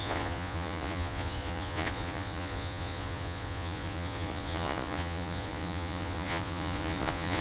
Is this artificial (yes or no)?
yes